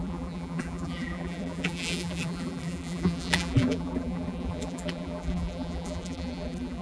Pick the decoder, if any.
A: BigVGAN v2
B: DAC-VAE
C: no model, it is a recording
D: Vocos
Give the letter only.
A